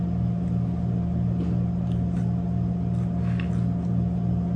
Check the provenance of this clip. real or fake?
real